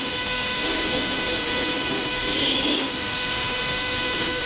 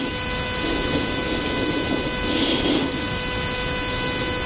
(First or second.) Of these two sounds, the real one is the second